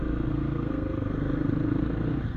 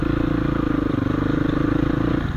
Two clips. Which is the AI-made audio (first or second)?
first